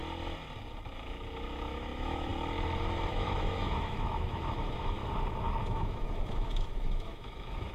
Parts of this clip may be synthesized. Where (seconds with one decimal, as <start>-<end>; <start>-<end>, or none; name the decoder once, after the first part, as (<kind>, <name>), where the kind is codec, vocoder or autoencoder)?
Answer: 0.9-2.3 (autoencoder, DAC-VAE); 3.1-5.0; 5.6-7.7